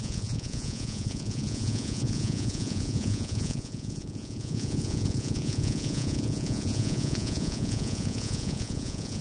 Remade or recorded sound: remade